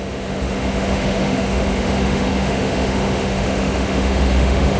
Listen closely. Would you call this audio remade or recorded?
remade